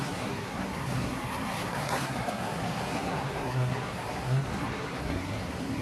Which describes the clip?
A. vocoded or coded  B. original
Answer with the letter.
A